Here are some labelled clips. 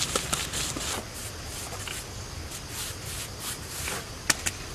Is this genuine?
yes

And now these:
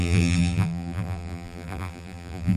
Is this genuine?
no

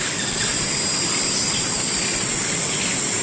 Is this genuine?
yes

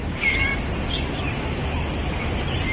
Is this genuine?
yes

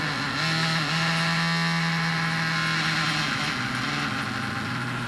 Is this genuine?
yes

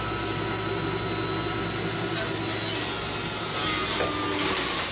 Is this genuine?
yes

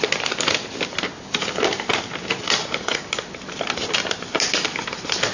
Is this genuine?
yes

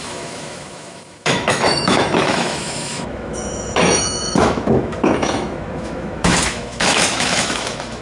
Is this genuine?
no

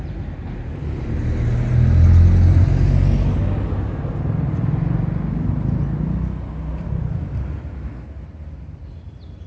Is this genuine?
yes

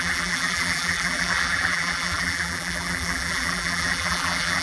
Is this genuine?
no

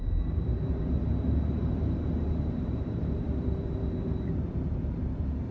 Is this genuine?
no